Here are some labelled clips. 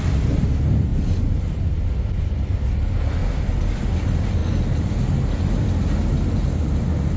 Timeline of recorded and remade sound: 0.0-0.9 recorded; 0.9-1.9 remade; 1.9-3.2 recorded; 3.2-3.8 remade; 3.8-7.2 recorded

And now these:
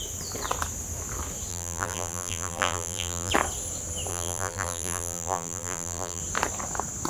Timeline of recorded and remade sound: 0.0-1.5 recorded; 1.5-3.3 remade; 3.3-4.1 recorded; 4.1-6.2 remade; 6.2-7.1 recorded

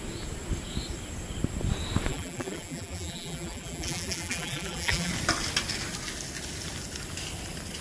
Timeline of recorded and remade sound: 0.0-2.1 recorded; 2.1-5.1 remade; 5.1-7.8 recorded

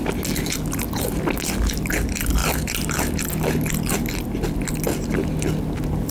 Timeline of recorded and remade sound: 0.0-6.1 recorded